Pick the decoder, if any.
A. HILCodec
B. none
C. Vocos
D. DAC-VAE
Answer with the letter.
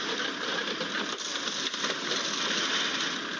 B